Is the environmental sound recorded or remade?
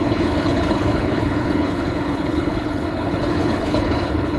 remade